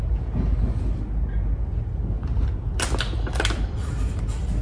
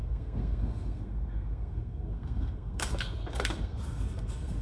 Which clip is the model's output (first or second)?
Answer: second